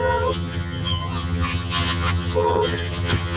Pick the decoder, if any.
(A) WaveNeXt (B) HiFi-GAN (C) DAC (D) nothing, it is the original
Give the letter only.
B